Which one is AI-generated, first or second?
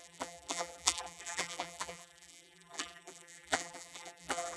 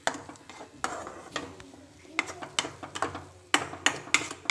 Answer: first